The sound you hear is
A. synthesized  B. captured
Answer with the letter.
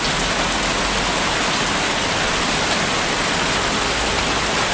B